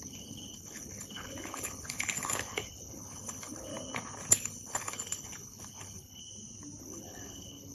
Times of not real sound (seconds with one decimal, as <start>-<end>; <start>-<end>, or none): 0.0-3.7; 4.3-6.2; 6.8-7.7